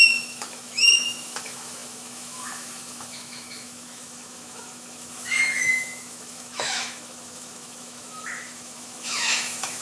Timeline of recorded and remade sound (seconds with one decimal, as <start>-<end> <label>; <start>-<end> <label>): 0.0-9.8 remade